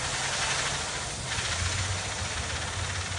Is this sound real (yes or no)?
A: yes